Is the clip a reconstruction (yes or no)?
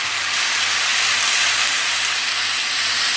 no